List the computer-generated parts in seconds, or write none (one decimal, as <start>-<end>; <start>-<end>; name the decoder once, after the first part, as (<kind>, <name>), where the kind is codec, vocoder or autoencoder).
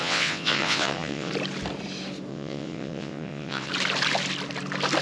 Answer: 0.0-1.3 (vocoder, WaveNeXt); 2.3-3.7